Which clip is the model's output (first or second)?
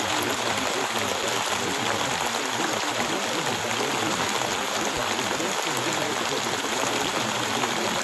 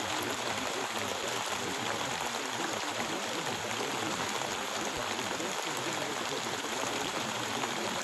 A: second